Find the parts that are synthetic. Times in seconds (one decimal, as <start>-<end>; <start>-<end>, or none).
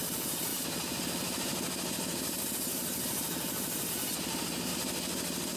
0.5-3.9